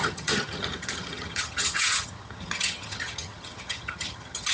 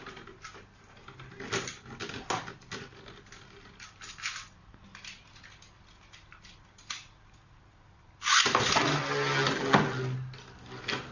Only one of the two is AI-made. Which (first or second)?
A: first